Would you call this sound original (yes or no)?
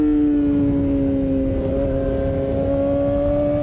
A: yes